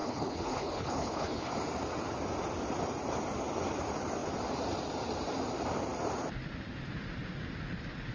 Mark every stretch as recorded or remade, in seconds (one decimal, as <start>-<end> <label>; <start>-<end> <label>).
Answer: 0.0-1.5 remade; 1.5-8.1 recorded